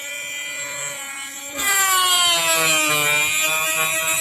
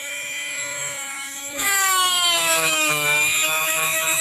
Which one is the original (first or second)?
first